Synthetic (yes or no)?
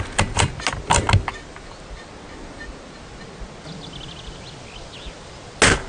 no